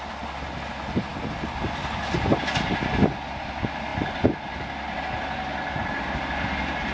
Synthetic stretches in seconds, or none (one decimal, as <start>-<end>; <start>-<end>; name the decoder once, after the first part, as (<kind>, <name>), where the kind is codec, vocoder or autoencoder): none